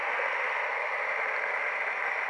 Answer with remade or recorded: recorded